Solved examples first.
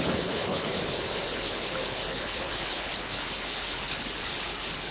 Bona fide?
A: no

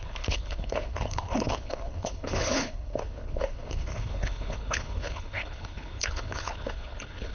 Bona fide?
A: no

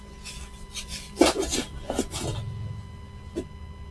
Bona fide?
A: yes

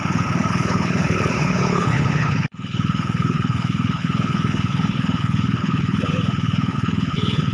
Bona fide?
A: no